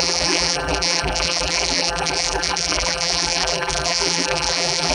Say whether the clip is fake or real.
fake